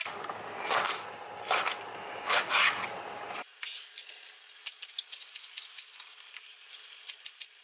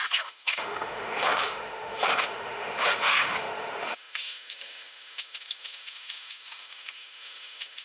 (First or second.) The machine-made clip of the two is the second